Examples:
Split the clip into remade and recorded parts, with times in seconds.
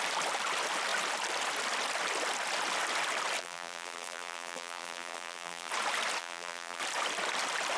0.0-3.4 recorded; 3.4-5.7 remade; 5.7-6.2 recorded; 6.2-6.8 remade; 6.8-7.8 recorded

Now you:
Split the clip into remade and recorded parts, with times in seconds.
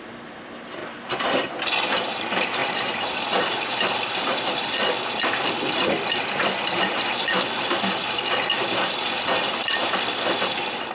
0.0-0.8 remade; 0.8-1.7 recorded; 1.7-10.9 remade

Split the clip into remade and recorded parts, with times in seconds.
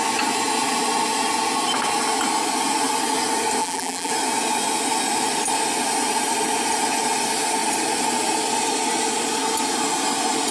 0.0-3.6 recorded; 3.6-4.1 remade; 4.1-10.5 recorded